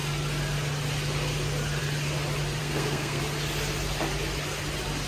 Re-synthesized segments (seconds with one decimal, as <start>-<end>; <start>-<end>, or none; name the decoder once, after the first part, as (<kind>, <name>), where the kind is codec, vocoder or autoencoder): 2.6-3.2 (codec, SNAC)